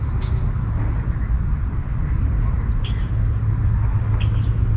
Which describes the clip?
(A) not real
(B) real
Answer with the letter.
B